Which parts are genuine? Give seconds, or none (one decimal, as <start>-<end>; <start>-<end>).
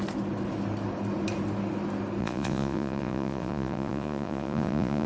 0.0-2.2